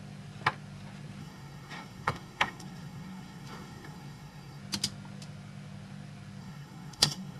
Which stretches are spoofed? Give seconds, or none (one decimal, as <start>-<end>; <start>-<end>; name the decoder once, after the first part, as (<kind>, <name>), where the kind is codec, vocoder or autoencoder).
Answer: 1.2-4.6 (codec, SNAC); 6.4-7.4